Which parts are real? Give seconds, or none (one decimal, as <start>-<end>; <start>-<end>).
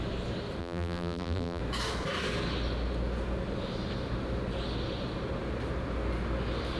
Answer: 0.0-0.6; 1.6-6.8